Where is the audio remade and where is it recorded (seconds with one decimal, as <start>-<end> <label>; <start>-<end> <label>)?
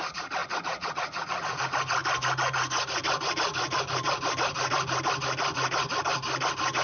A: 0.0-0.4 recorded; 0.4-1.6 remade; 1.6-6.8 recorded